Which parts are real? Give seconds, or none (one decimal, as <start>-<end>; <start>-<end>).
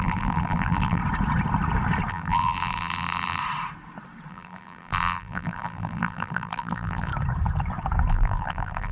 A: 1.0-2.1; 3.4-4.3; 7.1-8.1